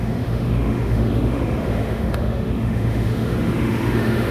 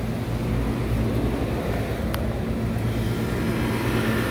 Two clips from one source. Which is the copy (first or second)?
first